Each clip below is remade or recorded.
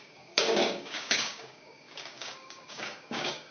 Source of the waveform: remade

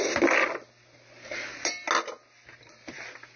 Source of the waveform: recorded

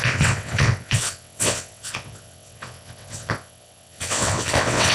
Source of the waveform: remade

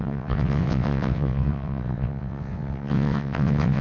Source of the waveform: remade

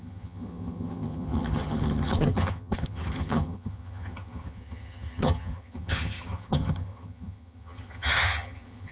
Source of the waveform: remade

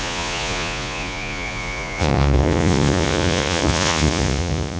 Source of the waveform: remade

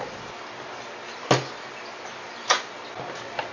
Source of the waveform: recorded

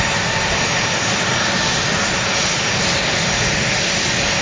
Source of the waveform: recorded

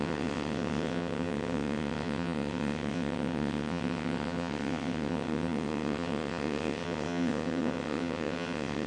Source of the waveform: remade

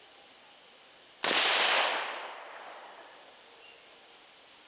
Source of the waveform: recorded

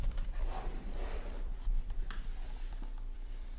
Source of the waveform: remade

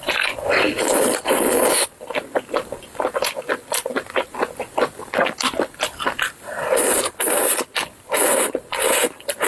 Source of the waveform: recorded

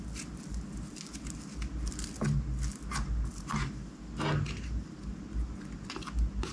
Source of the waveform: recorded